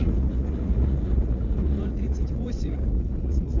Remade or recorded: remade